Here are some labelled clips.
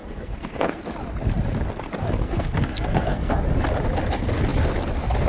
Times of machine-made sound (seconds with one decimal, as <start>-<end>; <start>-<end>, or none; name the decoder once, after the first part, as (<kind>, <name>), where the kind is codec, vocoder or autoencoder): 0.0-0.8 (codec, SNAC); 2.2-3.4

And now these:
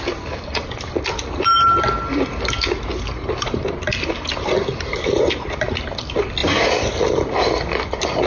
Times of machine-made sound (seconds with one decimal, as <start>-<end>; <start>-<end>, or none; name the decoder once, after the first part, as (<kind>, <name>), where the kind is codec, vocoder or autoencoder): 2.9-3.6 (vocoder, BigVGAN v2)

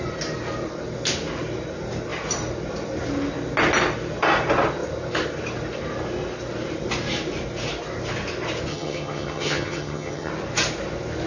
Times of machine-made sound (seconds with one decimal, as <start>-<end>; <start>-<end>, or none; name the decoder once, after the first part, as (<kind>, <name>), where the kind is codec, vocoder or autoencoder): 8.7-10.3 (vocoder, HiFi-GAN)